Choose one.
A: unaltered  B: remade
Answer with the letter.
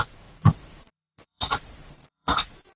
B